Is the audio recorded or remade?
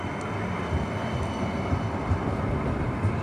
recorded